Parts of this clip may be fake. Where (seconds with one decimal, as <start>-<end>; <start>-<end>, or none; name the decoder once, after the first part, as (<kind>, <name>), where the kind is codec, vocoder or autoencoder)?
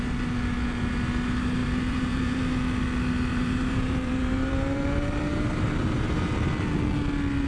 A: 1.6-2.4 (vocoder, BigVGAN v2); 3.3-6.5